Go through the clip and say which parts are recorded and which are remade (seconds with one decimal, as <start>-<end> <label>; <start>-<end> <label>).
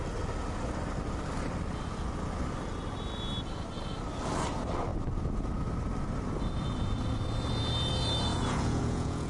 0.0-8.3 recorded; 8.3-9.3 remade